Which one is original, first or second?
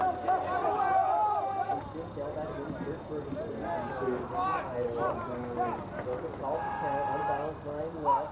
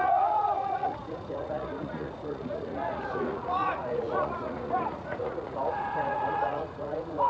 first